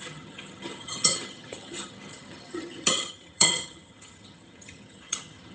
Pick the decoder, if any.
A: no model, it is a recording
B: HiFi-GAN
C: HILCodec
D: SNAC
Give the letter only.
B